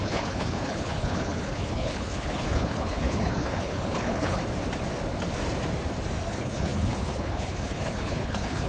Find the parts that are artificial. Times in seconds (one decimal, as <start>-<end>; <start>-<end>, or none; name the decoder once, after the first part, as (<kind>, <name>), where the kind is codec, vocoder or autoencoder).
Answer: 0.0-4.4 (codec, HILCodec); 6.3-8.7